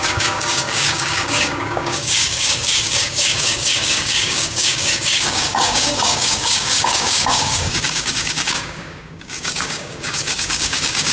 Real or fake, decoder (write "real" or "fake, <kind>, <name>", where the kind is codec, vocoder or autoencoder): fake, codec, DAC